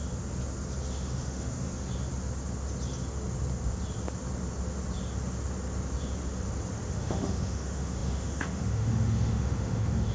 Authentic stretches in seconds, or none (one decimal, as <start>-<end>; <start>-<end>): 0.0-0.9; 1.7-6.9